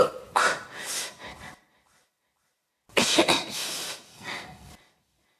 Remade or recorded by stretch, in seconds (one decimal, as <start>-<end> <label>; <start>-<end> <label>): 0.0-4.1 recorded; 4.1-4.7 remade; 4.7-5.4 recorded